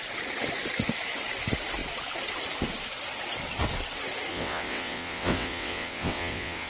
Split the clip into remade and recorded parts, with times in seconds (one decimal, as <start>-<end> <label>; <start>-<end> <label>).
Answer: 0.0-4.3 recorded; 4.3-6.7 remade